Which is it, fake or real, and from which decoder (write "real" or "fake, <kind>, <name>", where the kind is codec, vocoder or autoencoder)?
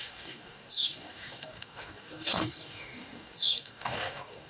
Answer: fake, codec, DAC